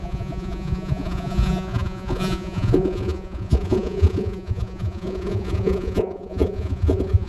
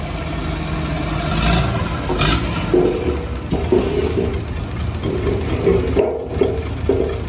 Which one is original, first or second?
second